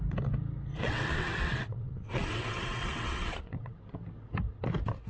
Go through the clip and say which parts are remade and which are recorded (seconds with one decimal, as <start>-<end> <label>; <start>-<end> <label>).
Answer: 0.0-0.7 recorded; 0.7-3.8 remade; 3.8-5.1 recorded